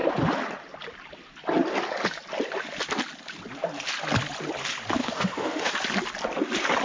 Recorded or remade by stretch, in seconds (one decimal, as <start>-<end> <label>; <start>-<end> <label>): 0.0-5.0 recorded; 5.0-5.7 remade; 5.7-6.8 recorded